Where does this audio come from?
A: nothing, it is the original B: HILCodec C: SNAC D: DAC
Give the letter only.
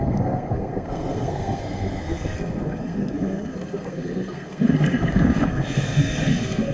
C